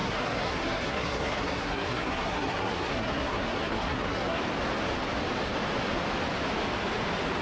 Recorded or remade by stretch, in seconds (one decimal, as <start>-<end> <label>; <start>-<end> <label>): 0.0-4.4 remade; 4.4-7.4 recorded